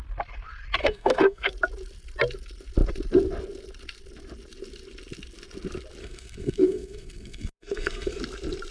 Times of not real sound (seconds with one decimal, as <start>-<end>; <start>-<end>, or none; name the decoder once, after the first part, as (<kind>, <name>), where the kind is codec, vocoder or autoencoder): 0.8-1.5 (codec, SNAC); 6.0-8.2